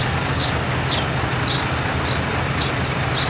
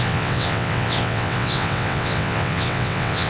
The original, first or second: first